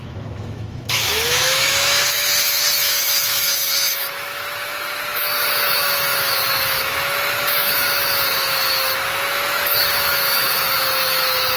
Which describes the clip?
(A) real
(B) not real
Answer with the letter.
B